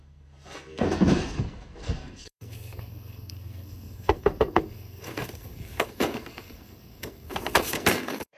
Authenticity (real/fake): fake